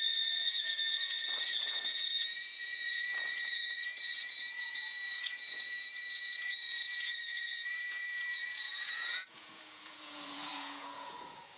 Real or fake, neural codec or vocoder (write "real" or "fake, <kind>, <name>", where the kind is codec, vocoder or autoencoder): fake, vocoder, Vocos